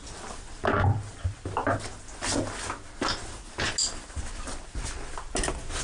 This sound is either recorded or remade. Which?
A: recorded